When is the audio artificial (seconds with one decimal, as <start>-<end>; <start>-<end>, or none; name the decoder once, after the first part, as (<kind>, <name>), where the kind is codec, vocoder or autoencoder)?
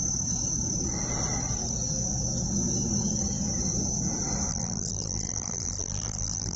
4.5-6.6 (vocoder, BigVGAN v2)